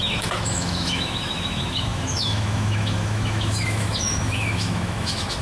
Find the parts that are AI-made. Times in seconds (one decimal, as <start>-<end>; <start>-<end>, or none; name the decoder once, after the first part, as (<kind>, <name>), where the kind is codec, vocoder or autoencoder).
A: 0.0-5.4 (autoencoder, DAC-VAE)